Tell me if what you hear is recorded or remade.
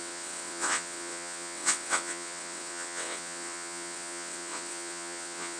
remade